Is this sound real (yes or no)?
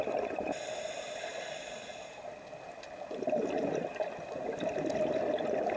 yes